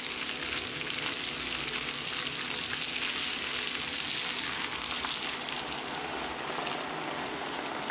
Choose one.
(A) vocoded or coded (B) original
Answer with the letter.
B